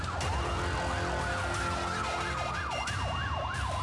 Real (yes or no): yes